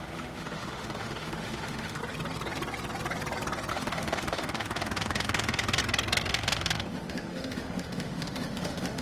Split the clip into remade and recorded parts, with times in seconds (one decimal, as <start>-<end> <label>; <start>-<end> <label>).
0.0-2.0 remade; 2.0-3.7 recorded; 3.7-5.8 remade; 5.8-6.3 recorded; 6.3-9.0 remade

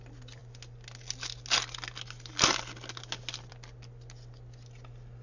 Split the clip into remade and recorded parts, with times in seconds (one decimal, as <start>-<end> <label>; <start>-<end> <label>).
0.0-5.2 recorded

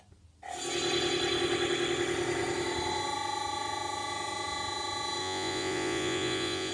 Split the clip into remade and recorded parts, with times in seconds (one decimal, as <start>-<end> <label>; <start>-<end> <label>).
0.0-5.2 recorded; 5.2-6.7 remade